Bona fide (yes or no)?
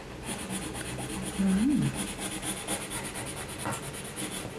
yes